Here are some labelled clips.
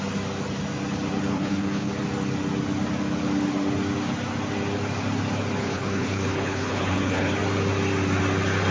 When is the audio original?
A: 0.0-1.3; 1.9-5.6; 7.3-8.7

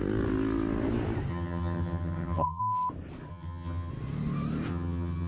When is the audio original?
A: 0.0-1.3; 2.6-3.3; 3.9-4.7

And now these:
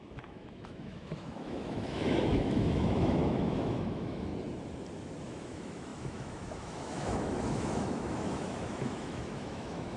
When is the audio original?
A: 4.3-5.2

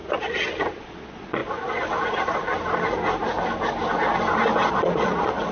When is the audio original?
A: 0.0-0.8; 1.4-4.7

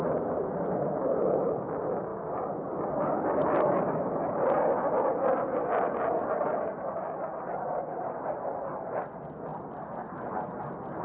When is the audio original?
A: 0.0-11.0

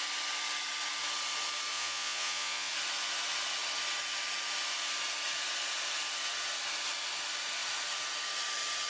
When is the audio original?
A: 0.0-1.7; 2.7-8.9